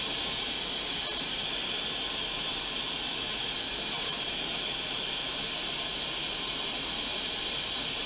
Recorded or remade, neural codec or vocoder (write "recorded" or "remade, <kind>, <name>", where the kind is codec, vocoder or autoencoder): remade, vocoder, BigVGAN v2